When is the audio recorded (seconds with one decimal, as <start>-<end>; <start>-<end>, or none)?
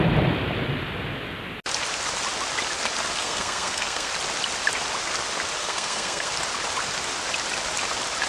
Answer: 0.0-3.2; 4.1-5.6; 6.3-8.3